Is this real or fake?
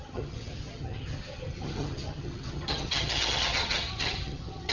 fake